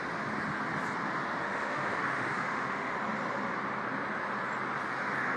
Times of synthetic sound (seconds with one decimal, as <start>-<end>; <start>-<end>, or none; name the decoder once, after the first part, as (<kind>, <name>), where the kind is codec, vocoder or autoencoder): 1.4-2.9 (autoencoder, DAC-VAE)